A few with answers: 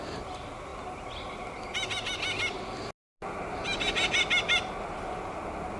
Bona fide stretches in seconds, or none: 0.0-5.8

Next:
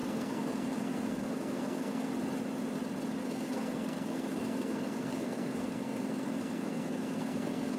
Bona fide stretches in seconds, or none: 2.1-3.2

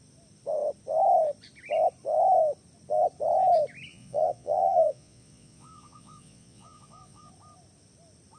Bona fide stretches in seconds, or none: 0.0-3.9; 7.3-8.4

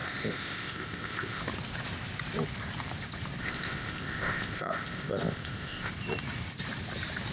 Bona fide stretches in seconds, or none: 1.4-3.4; 5.9-7.3